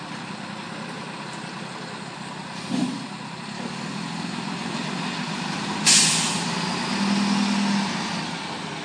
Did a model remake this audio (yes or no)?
no